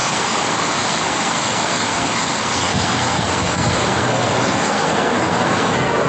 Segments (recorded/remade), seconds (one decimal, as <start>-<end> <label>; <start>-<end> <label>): 0.0-6.1 remade